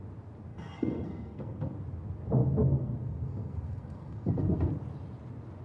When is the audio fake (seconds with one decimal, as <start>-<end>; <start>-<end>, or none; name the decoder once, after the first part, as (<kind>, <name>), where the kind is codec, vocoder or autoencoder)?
0.5-1.7 (codec, SNAC); 2.4-4.7